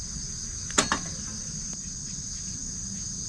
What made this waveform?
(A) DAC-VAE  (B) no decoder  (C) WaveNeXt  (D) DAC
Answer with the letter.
B